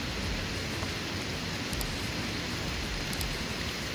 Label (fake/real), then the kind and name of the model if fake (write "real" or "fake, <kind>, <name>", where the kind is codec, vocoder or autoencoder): real